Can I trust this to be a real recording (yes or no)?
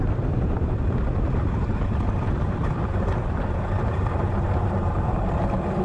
no